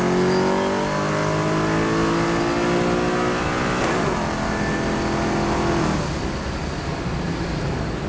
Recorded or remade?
recorded